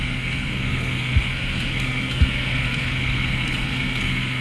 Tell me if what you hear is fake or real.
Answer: fake